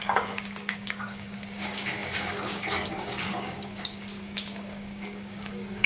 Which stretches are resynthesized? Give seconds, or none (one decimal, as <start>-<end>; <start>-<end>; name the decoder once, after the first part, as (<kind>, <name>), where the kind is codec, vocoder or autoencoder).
0.0-5.9 (codec, DAC)